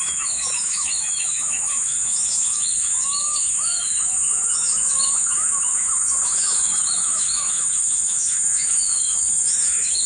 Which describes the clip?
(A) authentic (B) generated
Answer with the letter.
B